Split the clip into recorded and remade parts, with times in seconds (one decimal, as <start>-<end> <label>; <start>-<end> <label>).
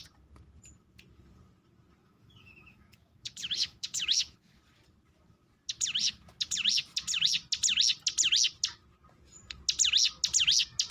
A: 0.0-2.0 recorded; 2.0-4.6 remade; 4.6-10.9 recorded